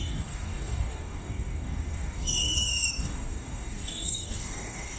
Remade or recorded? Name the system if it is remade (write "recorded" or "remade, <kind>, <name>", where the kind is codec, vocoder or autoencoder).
remade, codec, DAC